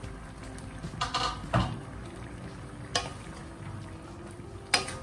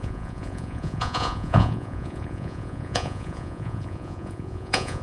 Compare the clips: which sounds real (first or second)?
first